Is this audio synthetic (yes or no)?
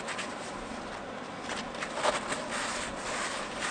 no